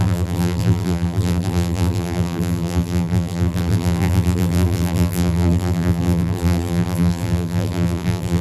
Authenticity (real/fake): fake